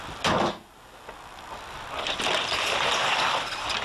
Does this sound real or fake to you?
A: real